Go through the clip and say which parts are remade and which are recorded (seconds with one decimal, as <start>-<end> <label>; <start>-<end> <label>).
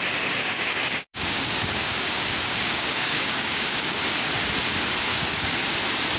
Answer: 0.0-0.4 recorded; 0.4-4.0 remade; 4.0-5.1 recorded; 5.1-5.7 remade; 5.7-6.2 recorded